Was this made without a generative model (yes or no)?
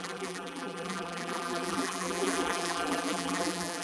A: no